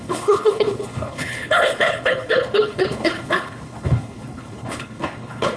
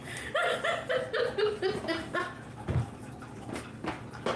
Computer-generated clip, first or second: first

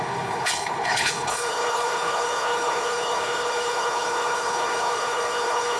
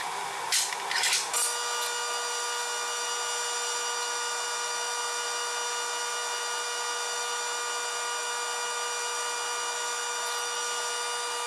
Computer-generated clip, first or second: first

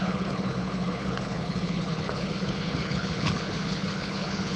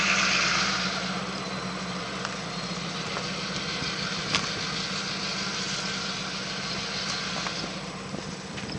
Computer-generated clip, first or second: first